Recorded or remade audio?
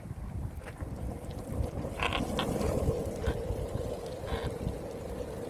recorded